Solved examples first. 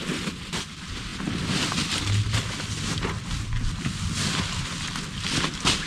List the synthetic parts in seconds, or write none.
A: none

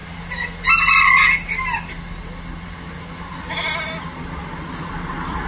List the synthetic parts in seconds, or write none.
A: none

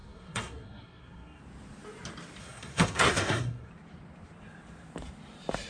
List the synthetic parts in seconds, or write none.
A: 0.0-1.4; 2.4-3.7